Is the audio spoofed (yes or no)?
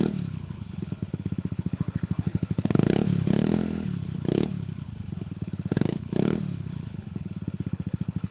yes